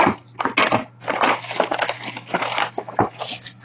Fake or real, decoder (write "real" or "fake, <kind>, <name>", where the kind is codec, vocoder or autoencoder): real